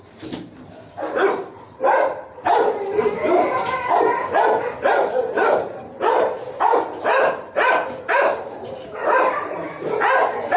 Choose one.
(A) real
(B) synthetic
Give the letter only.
B